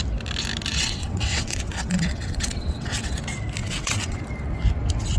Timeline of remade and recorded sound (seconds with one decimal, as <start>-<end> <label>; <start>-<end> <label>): 0.0-0.7 recorded; 0.7-3.2 remade; 3.2-3.6 recorded; 3.6-4.2 remade; 4.2-5.2 recorded